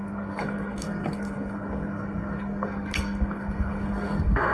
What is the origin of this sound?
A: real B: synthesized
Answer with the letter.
B